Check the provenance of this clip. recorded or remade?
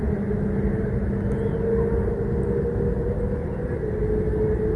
recorded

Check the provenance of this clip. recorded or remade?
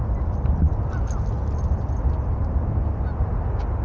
recorded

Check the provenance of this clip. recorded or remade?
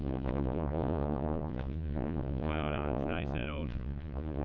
remade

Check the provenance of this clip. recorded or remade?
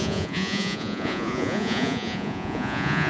remade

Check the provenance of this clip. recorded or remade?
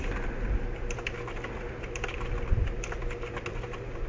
recorded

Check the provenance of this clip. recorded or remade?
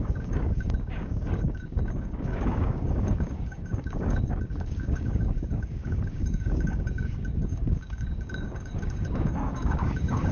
remade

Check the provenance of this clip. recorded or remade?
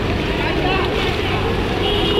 recorded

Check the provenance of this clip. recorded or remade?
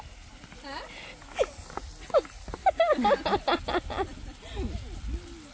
recorded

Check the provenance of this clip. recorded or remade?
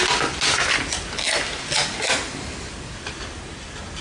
recorded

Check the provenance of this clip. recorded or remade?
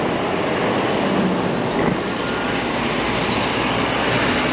recorded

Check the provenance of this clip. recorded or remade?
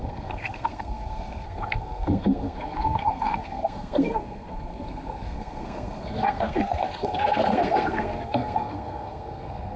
remade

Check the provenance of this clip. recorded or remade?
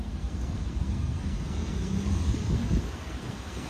remade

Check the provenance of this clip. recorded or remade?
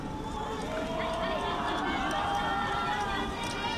remade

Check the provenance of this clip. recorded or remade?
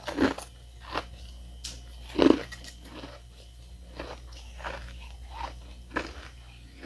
recorded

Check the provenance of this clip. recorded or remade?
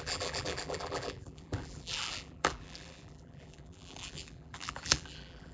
remade